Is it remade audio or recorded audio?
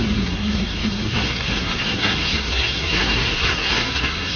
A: remade